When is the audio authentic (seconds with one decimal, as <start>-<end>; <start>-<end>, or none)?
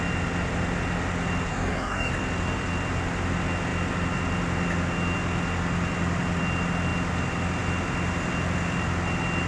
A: 0.0-1.5; 2.1-9.5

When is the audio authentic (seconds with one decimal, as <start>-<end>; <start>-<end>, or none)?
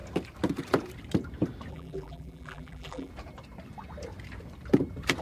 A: 0.0-1.7; 3.1-5.2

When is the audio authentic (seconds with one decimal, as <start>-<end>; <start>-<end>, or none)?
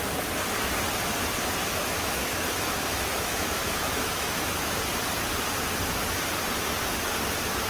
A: 0.0-1.6; 4.7-7.7